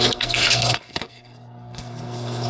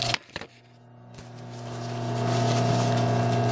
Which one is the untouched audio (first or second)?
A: second